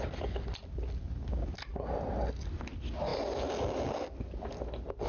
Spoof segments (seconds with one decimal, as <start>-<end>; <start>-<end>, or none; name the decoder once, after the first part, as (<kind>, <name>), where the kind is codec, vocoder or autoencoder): none